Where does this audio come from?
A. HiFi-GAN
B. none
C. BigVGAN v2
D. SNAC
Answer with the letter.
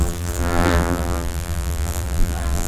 C